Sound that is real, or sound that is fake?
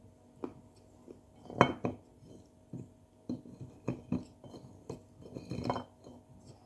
real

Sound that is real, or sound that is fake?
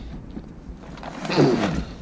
real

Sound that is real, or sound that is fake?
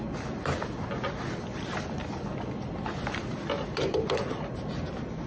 real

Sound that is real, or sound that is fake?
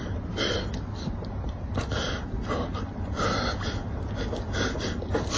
real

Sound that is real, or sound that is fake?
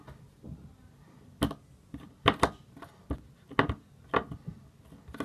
real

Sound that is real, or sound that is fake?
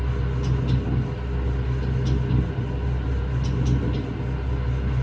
real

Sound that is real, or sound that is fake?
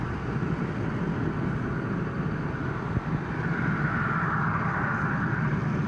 real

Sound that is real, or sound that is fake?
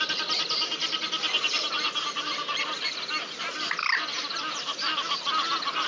real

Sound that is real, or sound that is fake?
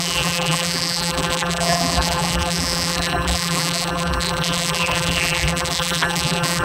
fake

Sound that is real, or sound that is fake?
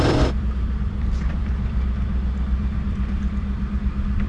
fake